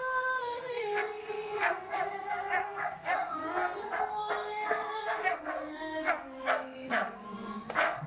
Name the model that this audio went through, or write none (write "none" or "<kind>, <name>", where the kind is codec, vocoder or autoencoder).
codec, SNAC